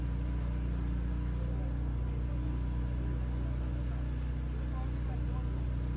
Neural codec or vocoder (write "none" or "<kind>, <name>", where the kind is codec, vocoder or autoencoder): none